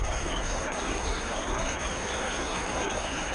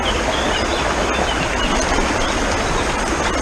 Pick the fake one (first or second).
first